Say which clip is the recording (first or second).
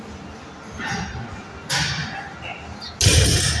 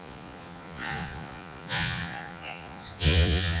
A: first